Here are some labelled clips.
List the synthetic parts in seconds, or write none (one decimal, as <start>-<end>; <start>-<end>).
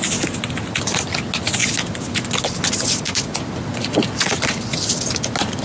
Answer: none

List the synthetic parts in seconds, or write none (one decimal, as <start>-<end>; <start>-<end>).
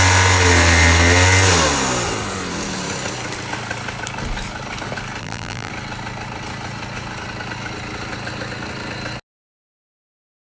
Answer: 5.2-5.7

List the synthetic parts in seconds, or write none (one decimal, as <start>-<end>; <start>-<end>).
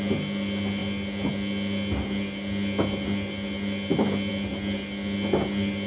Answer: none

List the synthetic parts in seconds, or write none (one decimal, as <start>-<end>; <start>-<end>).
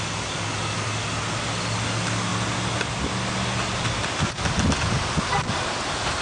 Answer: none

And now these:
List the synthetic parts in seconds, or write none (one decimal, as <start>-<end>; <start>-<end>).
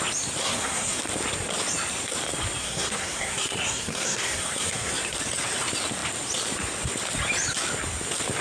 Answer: 0.4-1.0; 2.6-4.9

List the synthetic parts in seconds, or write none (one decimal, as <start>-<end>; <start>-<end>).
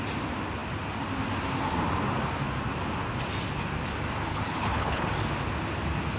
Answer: 4.3-5.1